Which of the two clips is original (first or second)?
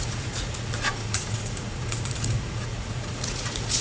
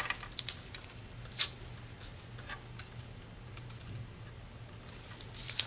second